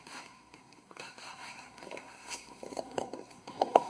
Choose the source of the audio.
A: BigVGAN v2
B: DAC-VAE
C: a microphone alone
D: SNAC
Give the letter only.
D